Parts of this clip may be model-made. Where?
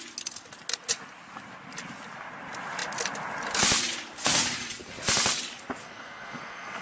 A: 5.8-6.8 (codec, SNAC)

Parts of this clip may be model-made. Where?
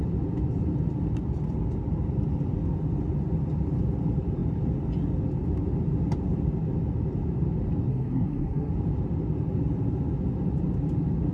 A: 7.9-8.7 (codec, SNAC)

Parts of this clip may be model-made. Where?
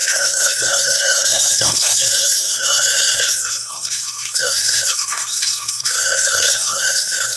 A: 0.0-7.4 (codec, SNAC)